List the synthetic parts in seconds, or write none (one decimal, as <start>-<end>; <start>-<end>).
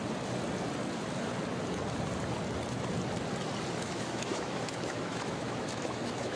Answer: 3.8-6.4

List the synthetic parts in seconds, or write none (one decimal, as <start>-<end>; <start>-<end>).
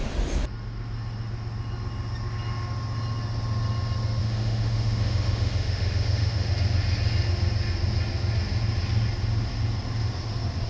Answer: 4.2-6.5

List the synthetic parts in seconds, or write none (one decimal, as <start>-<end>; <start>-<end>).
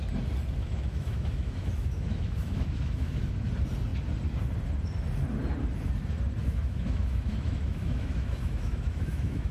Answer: 0.6-3.3; 6.4-9.5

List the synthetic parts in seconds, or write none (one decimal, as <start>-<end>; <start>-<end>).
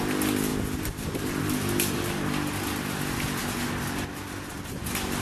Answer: none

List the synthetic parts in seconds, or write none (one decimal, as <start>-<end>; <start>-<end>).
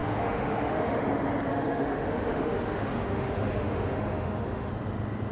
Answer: 0.0-1.0; 1.5-4.7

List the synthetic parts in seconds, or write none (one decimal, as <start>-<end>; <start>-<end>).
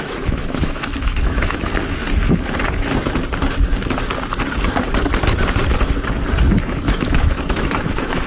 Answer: 0.0-1.7; 6.6-8.3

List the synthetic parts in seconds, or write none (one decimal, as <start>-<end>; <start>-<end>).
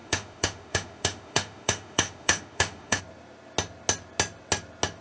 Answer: 0.0-3.0